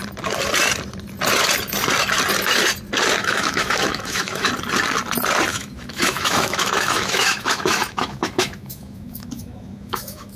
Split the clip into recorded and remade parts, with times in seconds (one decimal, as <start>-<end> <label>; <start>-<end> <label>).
0.0-3.2 recorded; 3.2-4.5 remade; 4.5-5.5 recorded; 5.5-10.4 remade

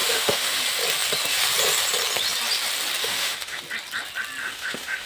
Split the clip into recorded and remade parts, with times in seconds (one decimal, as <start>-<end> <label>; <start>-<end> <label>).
0.0-0.6 remade; 0.6-3.0 recorded; 3.0-3.6 remade; 3.6-4.4 recorded; 4.4-5.1 remade

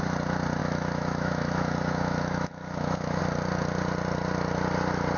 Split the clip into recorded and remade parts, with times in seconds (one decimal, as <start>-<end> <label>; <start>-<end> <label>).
0.0-0.6 recorded; 0.6-3.2 remade; 3.2-5.2 recorded

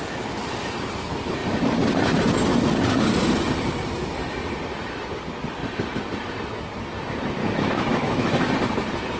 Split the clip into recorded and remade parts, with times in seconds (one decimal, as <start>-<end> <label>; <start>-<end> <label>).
0.0-7.4 recorded; 7.4-8.5 remade; 8.5-9.2 recorded

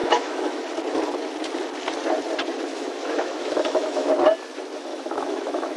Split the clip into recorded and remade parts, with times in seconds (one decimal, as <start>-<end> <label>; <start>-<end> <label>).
0.0-0.6 remade; 0.6-2.7 recorded; 2.7-4.1 remade; 4.1-4.9 recorded; 4.9-5.8 remade

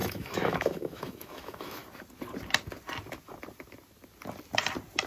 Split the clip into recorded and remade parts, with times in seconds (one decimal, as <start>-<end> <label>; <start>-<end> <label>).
0.0-1.8 remade; 1.8-5.1 recorded

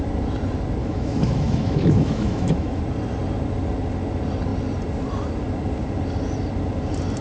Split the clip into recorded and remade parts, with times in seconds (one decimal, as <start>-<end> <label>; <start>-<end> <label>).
0.0-0.8 recorded; 0.8-2.8 remade; 2.8-7.2 recorded